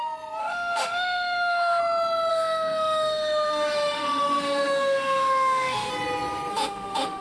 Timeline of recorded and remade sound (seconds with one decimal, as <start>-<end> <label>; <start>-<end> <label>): 0.0-0.4 recorded; 0.4-1.8 remade; 1.8-2.3 recorded; 2.3-5.9 remade; 5.9-6.5 recorded; 6.5-7.2 remade